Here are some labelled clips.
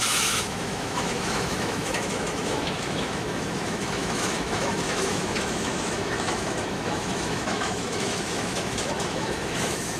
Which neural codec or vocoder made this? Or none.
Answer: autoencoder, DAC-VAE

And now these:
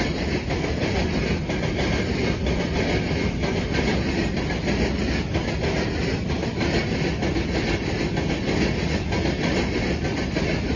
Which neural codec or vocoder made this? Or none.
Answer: none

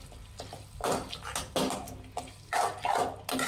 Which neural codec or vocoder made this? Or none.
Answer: none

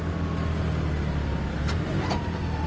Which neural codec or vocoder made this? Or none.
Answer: none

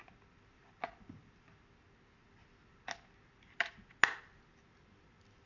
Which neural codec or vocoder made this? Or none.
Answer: none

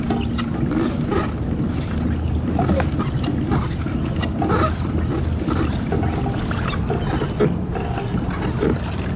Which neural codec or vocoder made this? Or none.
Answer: none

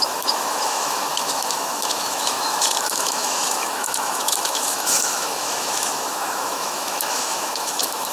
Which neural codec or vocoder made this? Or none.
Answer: autoencoder, DAC-VAE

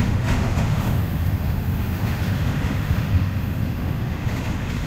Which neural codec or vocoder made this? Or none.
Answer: autoencoder, DAC-VAE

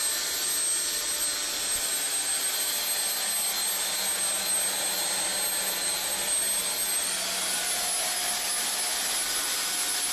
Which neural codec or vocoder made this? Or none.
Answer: none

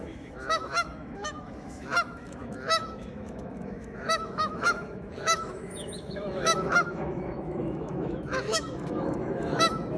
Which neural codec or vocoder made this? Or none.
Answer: autoencoder, DAC-VAE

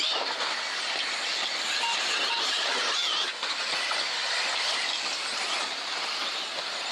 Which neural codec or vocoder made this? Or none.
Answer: none